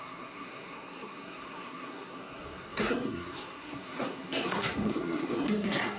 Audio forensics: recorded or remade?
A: remade